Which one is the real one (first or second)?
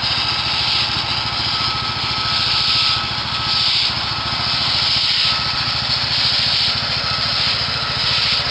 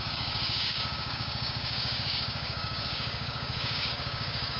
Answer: first